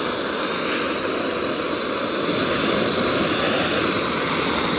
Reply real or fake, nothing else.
real